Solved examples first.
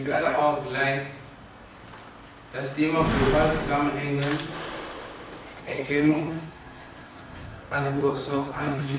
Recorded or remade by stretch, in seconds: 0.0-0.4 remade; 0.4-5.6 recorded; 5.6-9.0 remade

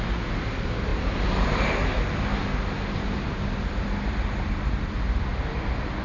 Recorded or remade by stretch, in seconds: 0.0-6.0 recorded

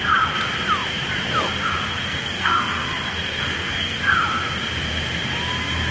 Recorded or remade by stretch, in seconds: 0.0-1.9 recorded; 1.9-4.0 remade; 4.0-5.9 recorded